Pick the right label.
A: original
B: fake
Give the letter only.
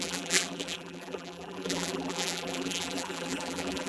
B